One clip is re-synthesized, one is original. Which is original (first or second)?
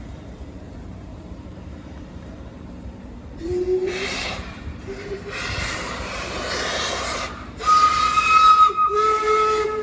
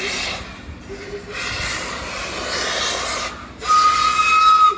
second